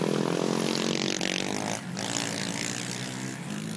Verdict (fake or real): real